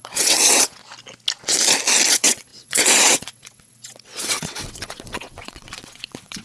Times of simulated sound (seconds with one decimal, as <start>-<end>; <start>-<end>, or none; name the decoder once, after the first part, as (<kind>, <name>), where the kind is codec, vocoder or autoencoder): 0.0-0.8 (vocoder, WaveNeXt); 2.1-6.4